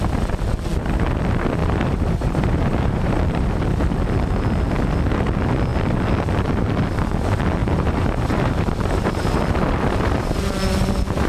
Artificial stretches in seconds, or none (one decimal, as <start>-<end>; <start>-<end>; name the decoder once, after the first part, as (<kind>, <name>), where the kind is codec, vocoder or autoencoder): 1.6-3.6 (vocoder, BigVGAN v2); 7.6-9.2